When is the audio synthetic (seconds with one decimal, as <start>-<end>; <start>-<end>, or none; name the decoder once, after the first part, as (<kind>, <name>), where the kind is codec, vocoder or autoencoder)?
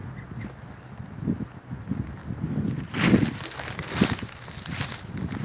1.7-2.2 (vocoder, BigVGAN v2); 3.8-5.4